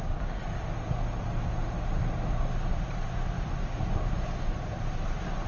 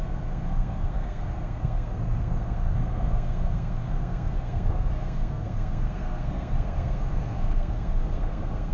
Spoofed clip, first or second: second